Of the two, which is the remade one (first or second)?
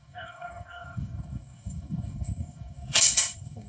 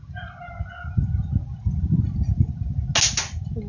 first